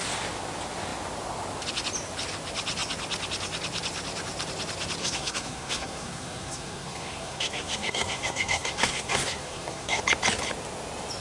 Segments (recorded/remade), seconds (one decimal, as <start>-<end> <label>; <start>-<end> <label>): 0.0-5.0 recorded; 5.0-10.0 remade; 10.0-11.2 recorded

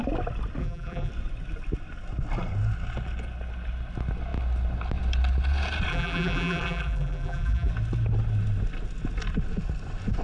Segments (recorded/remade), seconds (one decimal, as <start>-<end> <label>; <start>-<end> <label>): 0.0-0.6 recorded; 0.6-1.1 remade; 1.1-5.9 recorded; 5.9-7.7 remade; 7.7-10.2 recorded

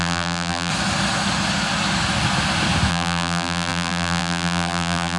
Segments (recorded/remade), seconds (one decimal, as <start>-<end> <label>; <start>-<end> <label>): 0.0-0.7 remade; 0.7-2.9 recorded; 2.9-5.2 remade

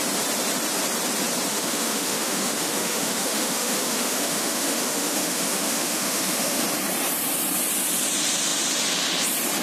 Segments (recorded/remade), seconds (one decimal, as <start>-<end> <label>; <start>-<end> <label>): 0.0-1.5 recorded; 1.5-6.6 remade; 6.6-9.6 recorded

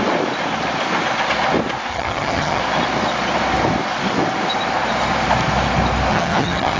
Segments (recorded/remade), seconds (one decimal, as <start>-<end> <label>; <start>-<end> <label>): 0.0-1.9 recorded; 1.9-2.6 remade; 2.6-6.1 recorded; 6.1-6.8 remade

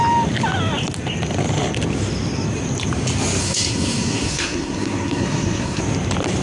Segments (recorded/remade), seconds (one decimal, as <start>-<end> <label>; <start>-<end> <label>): 0.0-3.4 recorded; 3.4-5.8 remade; 5.8-6.4 recorded

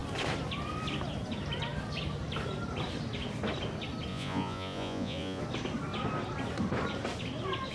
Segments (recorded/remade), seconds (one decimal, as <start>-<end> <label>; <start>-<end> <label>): 0.0-4.1 recorded; 4.1-5.4 remade; 5.4-7.7 recorded